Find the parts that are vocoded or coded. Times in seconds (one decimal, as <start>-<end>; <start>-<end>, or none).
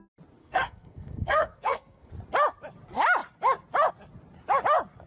0.4-2.1